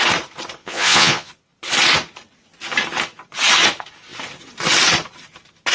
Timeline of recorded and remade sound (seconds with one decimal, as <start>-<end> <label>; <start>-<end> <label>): 0.0-0.6 recorded; 0.6-1.3 remade; 1.3-5.7 recorded